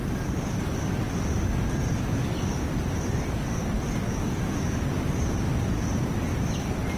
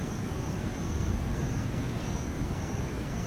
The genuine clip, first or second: first